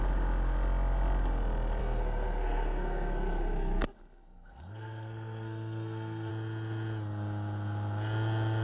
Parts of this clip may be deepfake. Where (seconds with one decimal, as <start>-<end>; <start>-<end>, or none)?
1.8-6.3